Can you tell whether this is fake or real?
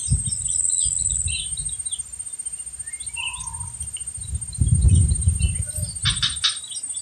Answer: real